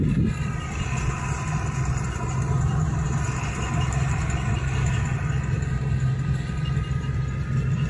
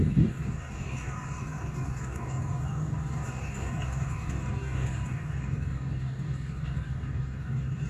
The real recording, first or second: first